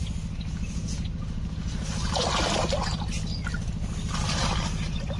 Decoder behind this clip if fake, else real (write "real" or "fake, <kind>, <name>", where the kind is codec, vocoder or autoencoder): real